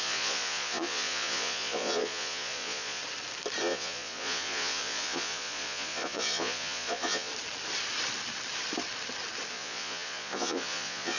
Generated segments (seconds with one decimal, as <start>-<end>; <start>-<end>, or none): 0.0-3.0; 3.6-7.3; 9.5-11.2